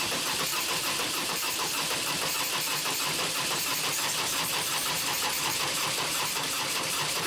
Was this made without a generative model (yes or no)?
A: no